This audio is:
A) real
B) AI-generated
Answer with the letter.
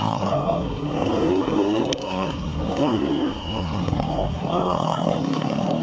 B